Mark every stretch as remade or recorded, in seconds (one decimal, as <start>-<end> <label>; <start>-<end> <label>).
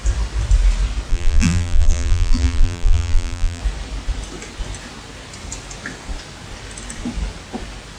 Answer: 0.0-1.1 recorded; 1.1-3.6 remade; 3.6-8.0 recorded